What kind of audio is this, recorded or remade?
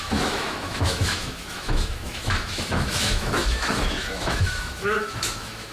remade